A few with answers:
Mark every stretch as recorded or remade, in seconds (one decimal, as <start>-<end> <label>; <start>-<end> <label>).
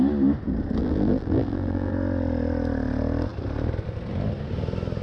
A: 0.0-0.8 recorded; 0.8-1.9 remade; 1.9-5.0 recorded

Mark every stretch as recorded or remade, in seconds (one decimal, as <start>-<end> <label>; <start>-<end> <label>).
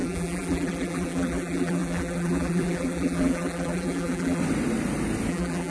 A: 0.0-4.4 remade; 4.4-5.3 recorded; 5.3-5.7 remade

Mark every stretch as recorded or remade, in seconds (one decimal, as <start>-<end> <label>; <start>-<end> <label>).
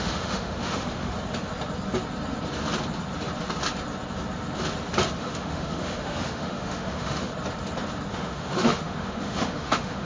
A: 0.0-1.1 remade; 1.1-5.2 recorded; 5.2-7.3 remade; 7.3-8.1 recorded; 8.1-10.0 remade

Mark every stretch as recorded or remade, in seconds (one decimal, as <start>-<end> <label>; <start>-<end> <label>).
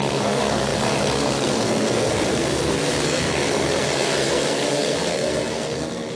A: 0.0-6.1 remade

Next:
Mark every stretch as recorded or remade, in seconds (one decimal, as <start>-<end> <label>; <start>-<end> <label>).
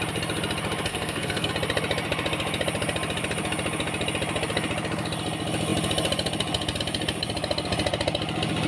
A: 0.0-0.9 recorded; 0.9-1.5 remade; 1.5-8.7 recorded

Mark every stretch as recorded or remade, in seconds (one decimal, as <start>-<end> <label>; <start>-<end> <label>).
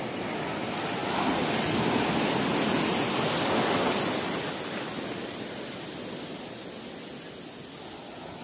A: 0.0-1.0 remade; 1.0-5.3 recorded; 5.3-6.6 remade; 6.6-8.0 recorded; 8.0-8.4 remade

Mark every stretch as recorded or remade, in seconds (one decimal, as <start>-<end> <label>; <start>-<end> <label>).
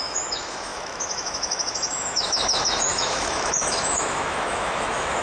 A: 0.0-5.2 remade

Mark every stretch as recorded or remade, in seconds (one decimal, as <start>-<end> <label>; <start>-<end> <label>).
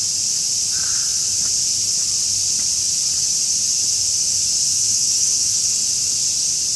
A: 0.0-4.7 recorded; 4.7-5.6 remade; 5.6-6.8 recorded